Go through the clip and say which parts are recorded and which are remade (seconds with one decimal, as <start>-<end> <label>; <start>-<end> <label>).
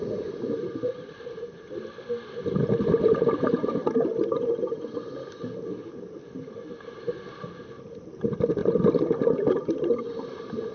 0.0-10.7 recorded